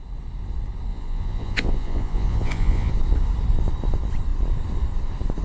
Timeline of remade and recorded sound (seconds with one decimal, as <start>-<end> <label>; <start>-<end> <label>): 0.0-0.9 recorded; 0.9-2.9 remade; 2.9-5.4 recorded